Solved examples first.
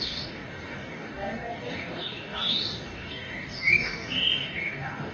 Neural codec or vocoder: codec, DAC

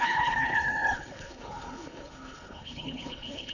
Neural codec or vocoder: codec, HILCodec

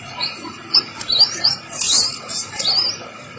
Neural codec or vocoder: none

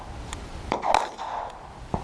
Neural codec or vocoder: none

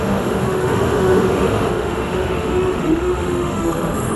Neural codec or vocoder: autoencoder, DAC-VAE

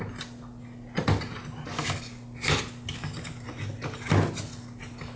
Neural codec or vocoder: none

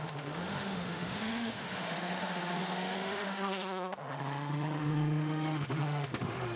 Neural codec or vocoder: autoencoder, DAC-VAE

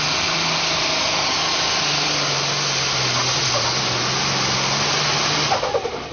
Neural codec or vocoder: none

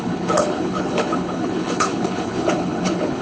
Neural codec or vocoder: codec, HILCodec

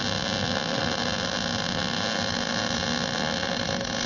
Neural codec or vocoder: none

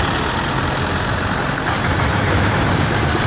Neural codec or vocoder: none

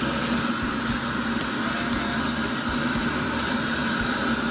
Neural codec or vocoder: none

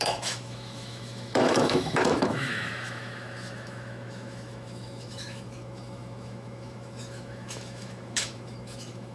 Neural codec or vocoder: autoencoder, DAC-VAE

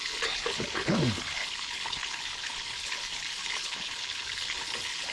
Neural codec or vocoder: codec, HILCodec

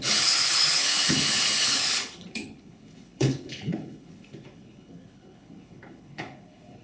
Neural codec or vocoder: codec, HILCodec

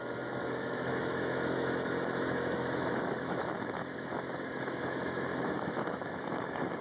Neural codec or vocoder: autoencoder, DAC-VAE